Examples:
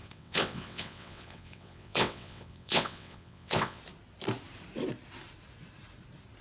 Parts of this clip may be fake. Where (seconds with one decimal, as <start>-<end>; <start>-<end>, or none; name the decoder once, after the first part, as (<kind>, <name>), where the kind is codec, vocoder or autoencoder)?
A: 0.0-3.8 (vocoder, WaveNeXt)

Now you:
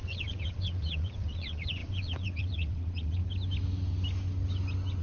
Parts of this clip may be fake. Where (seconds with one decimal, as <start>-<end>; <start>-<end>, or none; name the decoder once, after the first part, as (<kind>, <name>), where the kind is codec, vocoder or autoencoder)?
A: 0.0-3.2 (vocoder, WaveNeXt)

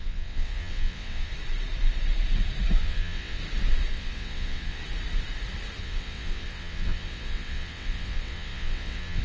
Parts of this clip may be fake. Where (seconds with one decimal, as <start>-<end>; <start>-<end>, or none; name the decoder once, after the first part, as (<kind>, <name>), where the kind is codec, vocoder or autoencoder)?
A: 0.0-1.3 (vocoder, WaveNeXt); 2.8-3.4; 3.9-4.8; 5.8-9.2

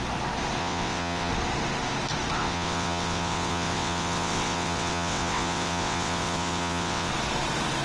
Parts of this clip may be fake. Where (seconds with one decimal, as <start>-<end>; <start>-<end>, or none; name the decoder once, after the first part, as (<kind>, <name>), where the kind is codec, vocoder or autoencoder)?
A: 0.6-1.3 (vocoder, WaveNeXt); 2.4-7.1

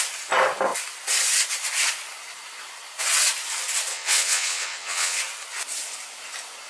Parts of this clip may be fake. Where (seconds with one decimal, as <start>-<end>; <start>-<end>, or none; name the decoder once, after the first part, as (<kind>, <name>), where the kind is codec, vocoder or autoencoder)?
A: 3.9-5.2 (vocoder, WaveNeXt)

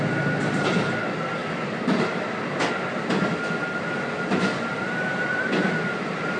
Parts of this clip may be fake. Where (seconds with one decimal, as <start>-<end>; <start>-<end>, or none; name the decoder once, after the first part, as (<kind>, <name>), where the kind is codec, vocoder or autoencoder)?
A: none